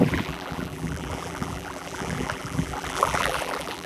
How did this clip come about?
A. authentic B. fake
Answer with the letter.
B